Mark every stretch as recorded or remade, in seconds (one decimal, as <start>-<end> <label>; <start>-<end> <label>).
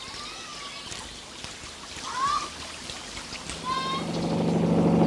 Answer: 0.0-5.1 recorded